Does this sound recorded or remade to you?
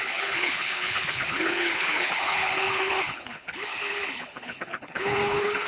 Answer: remade